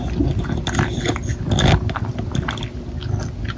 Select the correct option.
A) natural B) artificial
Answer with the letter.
A